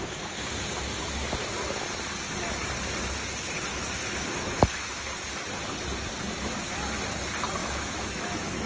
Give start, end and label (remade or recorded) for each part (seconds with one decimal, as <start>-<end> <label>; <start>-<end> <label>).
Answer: 0.0-3.7 recorded; 3.7-5.0 remade; 5.0-7.6 recorded; 7.6-8.7 remade